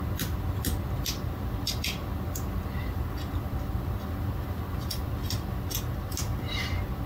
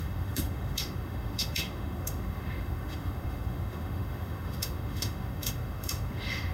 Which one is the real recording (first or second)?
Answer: first